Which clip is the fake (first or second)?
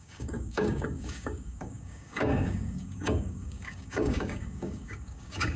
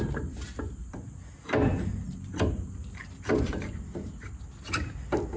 first